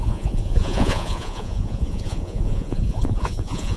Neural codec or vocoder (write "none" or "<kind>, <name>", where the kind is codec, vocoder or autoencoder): vocoder, Vocos